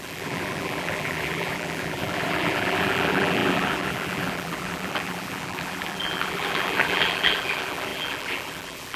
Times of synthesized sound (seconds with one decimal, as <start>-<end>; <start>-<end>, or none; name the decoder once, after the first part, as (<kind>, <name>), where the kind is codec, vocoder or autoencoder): 0.0-9.0 (vocoder, BigVGAN v2)